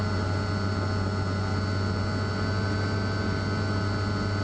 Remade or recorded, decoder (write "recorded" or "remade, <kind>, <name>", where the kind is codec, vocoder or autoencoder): recorded